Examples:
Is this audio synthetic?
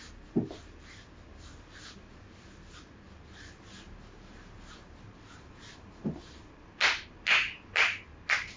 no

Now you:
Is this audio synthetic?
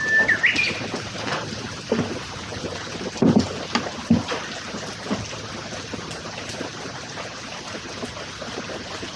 no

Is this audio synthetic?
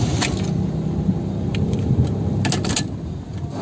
no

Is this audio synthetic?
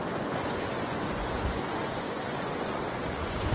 yes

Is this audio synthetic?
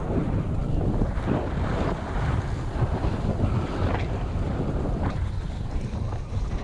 no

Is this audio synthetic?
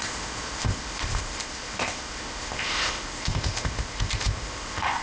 yes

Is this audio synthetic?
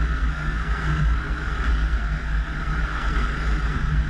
yes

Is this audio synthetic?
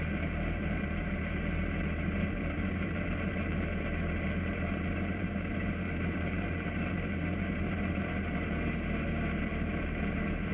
yes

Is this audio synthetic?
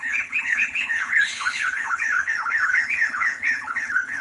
yes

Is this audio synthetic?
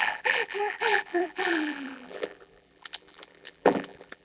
yes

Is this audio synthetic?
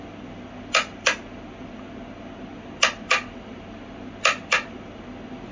no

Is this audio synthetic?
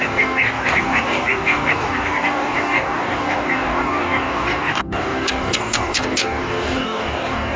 yes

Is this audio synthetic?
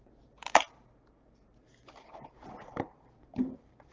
yes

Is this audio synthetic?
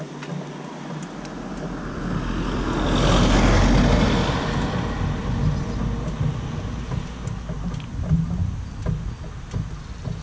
no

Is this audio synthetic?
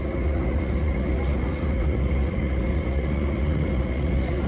yes